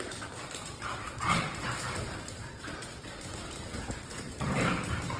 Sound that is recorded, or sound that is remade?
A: remade